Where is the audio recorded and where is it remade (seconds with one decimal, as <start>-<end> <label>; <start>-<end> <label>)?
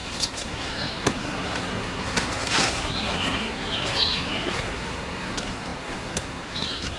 0.0-7.0 remade